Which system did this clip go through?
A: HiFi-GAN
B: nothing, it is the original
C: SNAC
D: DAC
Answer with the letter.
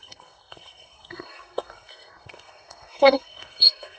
C